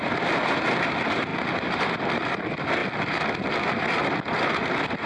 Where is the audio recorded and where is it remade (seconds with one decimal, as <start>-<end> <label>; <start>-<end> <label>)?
0.0-5.1 recorded